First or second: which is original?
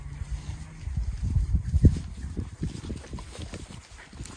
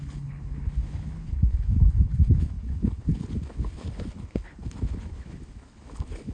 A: first